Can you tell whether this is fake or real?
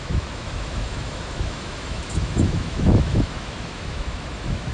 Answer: fake